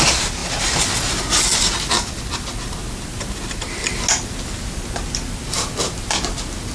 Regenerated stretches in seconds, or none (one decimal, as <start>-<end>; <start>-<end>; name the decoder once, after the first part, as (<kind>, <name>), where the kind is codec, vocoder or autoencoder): 3.1-3.7 (vocoder, BigVGAN v2)